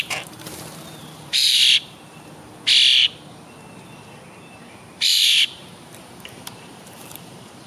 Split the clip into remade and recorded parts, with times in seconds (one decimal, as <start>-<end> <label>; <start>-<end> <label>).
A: 0.0-1.6 remade; 1.6-4.7 recorded; 4.7-7.7 remade